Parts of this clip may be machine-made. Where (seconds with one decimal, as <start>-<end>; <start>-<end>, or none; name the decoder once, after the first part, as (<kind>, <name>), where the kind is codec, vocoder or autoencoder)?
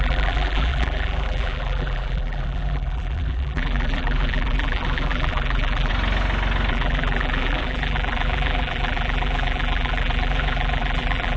0.0-5.9 (vocoder, BigVGAN v2); 6.7-11.4